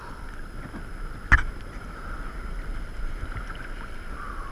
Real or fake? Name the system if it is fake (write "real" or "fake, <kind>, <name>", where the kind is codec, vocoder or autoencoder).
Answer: fake, vocoder, BigVGAN v2